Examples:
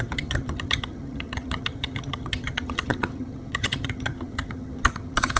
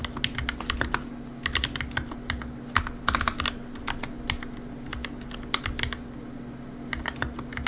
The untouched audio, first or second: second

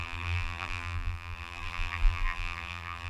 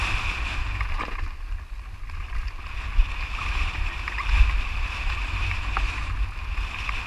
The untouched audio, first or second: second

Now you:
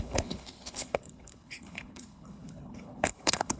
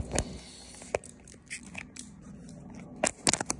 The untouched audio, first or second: second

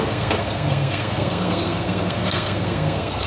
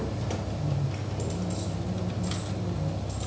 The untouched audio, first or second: second